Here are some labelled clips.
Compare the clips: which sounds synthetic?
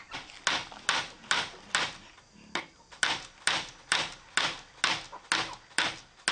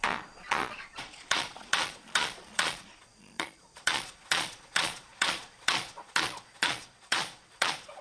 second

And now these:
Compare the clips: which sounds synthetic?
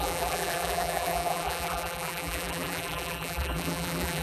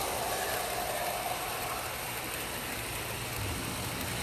first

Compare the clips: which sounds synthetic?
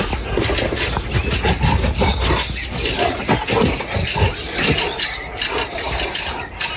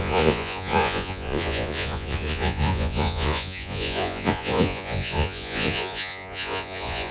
second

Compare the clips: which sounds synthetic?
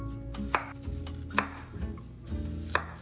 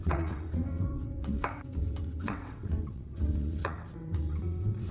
second